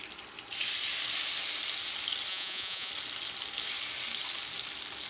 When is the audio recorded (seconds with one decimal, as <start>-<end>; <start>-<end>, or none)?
0.0-2.3; 2.9-5.1